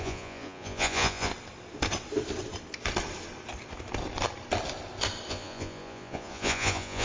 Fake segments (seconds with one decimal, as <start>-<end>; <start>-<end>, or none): 0.0-1.3; 5.3-7.0